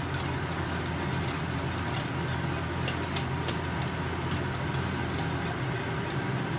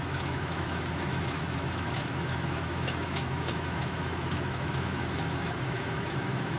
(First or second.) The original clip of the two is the first